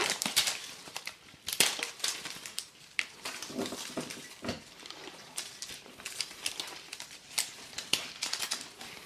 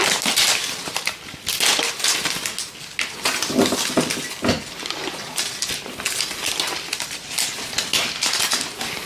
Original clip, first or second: second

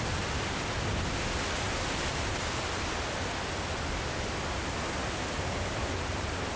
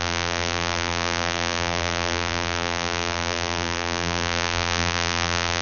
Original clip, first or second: first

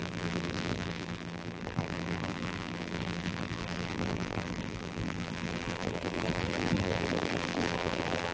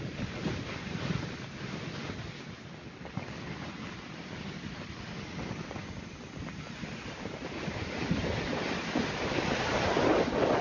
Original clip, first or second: second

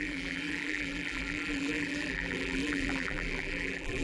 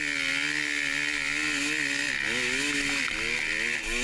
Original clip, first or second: second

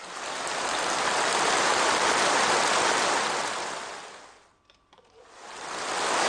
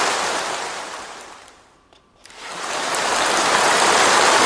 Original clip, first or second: first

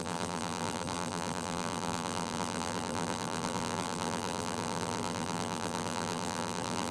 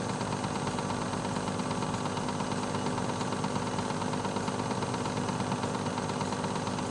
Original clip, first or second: second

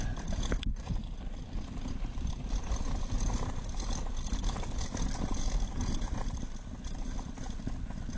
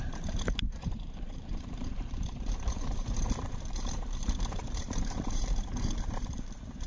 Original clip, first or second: first